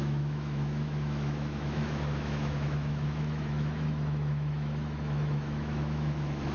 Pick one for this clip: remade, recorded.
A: remade